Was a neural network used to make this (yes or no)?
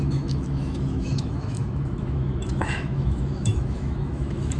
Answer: yes